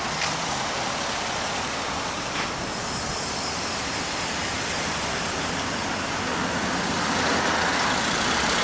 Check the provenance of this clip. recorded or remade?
recorded